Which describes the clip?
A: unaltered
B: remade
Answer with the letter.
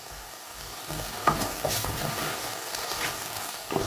B